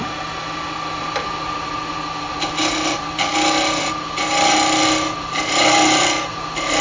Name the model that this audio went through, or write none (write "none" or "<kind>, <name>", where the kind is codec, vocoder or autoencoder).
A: none